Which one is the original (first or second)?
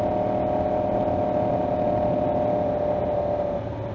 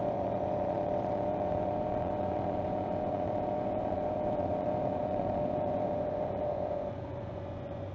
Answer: first